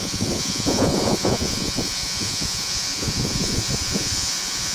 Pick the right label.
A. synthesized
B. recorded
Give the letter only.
A